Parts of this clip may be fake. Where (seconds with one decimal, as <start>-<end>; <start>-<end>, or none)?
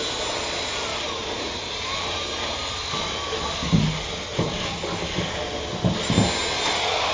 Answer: none